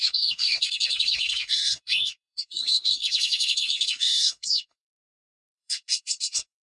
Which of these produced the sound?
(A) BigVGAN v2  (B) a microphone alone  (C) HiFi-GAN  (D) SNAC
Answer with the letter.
D